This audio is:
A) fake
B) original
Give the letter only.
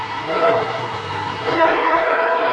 A